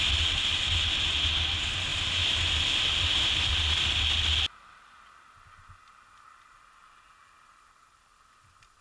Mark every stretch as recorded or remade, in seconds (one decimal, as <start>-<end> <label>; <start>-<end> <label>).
0.0-8.8 recorded